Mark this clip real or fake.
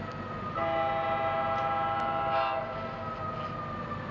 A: real